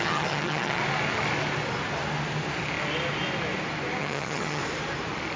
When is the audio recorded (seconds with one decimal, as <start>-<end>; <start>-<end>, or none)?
0.8-4.0; 4.6-5.4